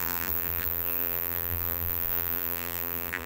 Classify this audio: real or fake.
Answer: fake